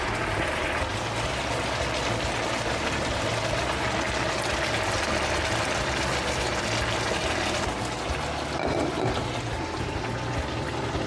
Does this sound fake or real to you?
real